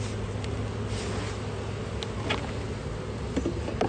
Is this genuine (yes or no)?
yes